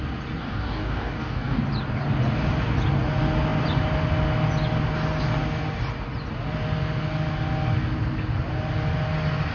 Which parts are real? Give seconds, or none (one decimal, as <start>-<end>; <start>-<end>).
0.0-0.4; 1.6-9.5